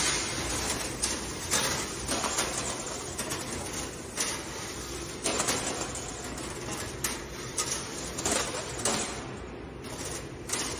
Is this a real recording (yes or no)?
yes